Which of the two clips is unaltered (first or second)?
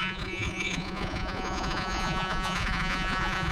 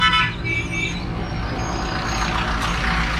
second